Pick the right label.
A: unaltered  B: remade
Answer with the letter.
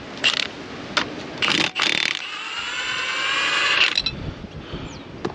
A